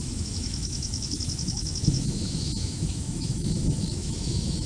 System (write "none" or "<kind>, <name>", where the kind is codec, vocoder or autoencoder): autoencoder, DAC-VAE